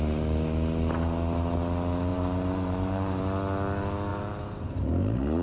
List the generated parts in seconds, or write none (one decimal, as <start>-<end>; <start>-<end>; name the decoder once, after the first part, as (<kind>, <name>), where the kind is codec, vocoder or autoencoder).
2.1-3.2 (vocoder, BigVGAN v2); 4.1-4.8